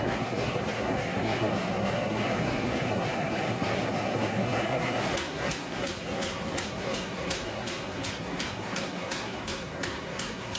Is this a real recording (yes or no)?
no